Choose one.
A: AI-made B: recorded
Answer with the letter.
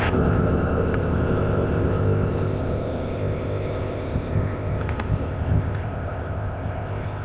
A